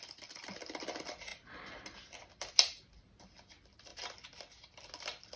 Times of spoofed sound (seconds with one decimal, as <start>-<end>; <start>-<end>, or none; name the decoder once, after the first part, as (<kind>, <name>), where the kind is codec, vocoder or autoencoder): none